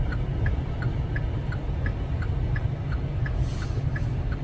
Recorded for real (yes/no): yes